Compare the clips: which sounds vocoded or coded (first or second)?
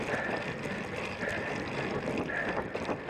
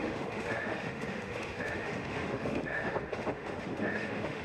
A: second